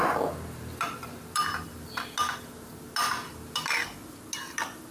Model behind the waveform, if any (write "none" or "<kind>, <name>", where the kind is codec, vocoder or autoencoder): none